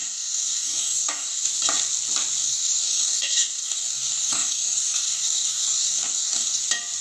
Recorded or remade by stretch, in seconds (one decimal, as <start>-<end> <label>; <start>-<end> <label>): 0.0-1.5 remade; 1.5-2.4 recorded; 2.4-6.6 remade; 6.6-7.0 recorded